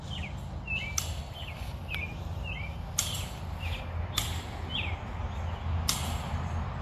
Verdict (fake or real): real